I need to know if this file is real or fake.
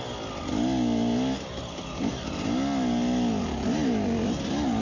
real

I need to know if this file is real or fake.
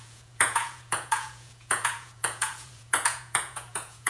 fake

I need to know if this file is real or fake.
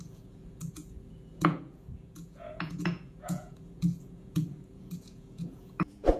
fake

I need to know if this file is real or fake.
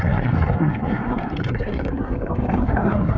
fake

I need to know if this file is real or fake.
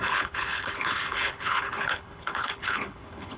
fake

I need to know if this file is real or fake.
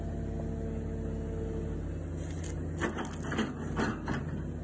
real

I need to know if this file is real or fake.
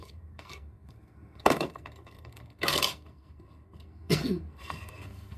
fake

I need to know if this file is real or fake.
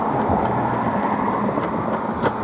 real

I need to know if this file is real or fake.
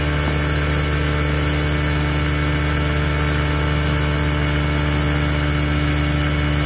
real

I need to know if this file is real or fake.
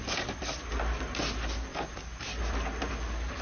real